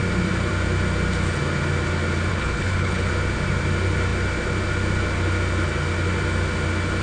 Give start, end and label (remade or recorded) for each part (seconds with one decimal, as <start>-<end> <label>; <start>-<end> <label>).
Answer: 0.0-2.3 recorded; 2.3-3.1 remade; 3.1-7.0 recorded